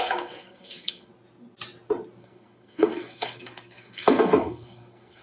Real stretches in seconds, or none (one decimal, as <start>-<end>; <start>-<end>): 1.1-2.2